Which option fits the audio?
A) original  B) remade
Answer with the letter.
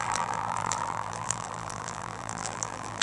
B